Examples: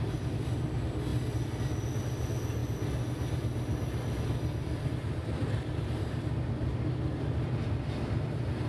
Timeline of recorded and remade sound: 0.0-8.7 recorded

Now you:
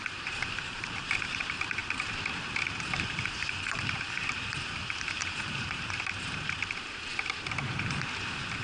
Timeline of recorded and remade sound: 0.0-8.6 remade

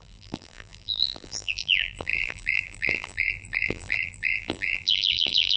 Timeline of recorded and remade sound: 0.0-5.6 remade

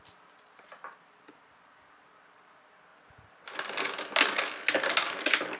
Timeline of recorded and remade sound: 0.0-5.6 recorded

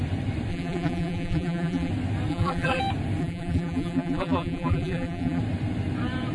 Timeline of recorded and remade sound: 0.0-0.5 recorded; 0.5-1.9 remade; 1.9-2.3 recorded; 2.3-2.8 remade; 2.8-3.2 recorded; 3.2-5.4 remade; 5.4-6.3 recorded

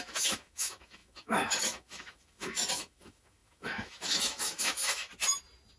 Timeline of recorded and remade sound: 0.0-5.1 remade; 5.1-5.8 recorded

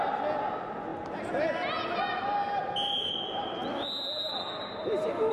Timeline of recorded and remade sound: 0.0-5.3 recorded

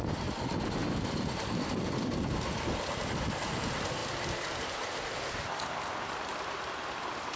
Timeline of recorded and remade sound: 0.0-0.8 recorded; 0.8-3.4 remade; 3.4-4.0 recorded; 4.0-4.5 remade; 4.5-7.4 recorded